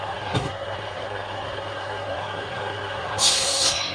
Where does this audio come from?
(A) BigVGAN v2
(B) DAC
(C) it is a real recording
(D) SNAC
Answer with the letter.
D